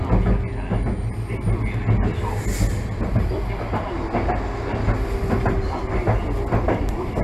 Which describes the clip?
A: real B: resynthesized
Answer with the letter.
A